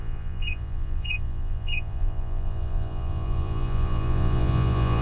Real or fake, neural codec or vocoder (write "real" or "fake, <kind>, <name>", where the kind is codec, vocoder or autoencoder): fake, vocoder, Vocos